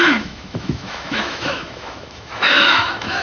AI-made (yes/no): yes